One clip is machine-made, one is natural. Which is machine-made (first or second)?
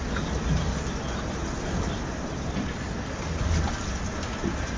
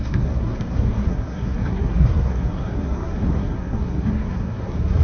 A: second